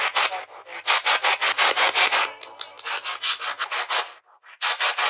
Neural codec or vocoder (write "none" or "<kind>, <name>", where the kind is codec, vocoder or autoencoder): none